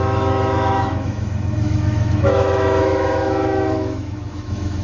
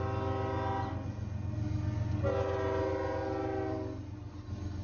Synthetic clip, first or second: first